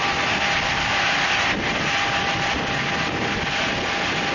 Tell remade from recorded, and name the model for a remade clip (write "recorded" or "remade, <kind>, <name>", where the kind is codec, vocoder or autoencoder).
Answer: recorded